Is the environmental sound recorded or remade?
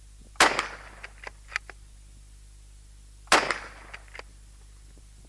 recorded